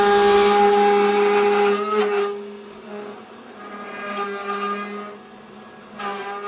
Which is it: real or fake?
real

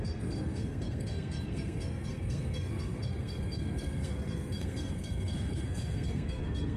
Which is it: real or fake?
fake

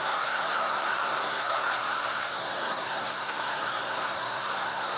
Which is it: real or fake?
fake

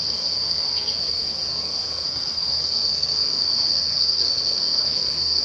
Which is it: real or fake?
fake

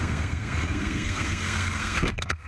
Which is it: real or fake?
fake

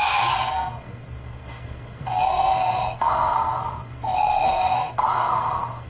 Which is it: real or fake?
fake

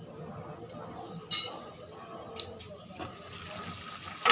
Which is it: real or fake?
real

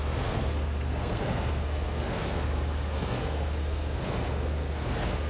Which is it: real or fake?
fake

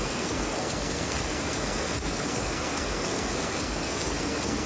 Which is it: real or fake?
fake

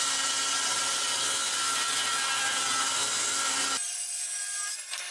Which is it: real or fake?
real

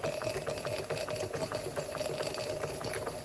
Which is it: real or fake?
real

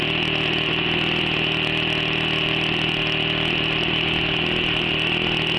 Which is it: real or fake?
real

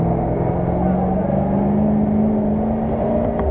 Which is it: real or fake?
real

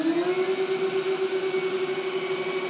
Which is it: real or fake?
real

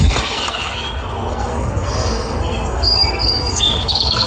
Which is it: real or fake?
fake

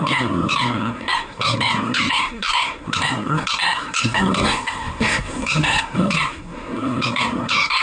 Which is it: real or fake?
fake